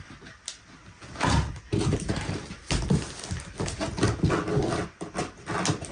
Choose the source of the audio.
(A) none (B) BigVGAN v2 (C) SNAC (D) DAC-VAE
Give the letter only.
A